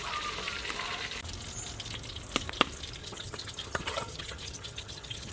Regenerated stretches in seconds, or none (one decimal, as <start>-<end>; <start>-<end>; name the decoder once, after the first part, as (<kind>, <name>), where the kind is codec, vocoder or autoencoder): 3.0-5.3 (vocoder, HiFi-GAN)

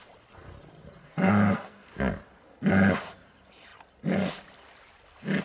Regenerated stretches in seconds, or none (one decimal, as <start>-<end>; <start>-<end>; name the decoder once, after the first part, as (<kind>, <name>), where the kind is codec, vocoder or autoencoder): 1.0-1.9 (codec, SNAC)

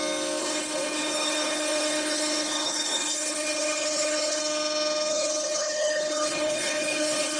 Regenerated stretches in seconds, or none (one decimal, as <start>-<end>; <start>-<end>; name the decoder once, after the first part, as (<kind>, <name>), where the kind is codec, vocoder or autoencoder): 0.4-4.4 (codec, HILCodec); 5.1-7.4

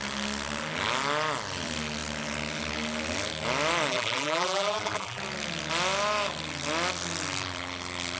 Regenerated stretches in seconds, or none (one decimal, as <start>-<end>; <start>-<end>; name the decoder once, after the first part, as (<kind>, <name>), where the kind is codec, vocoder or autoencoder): 3.9-5.2 (vocoder, BigVGAN v2)

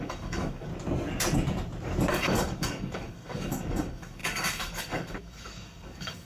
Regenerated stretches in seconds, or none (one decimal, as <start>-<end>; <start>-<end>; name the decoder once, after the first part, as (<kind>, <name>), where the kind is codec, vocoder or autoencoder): 0.0-0.7 (codec, DAC); 2.1-6.3

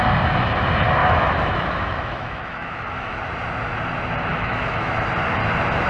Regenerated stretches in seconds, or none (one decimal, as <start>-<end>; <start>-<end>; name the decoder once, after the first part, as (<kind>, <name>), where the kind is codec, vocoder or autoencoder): 1.0-3.2 (autoencoder, DAC-VAE); 4.3-4.9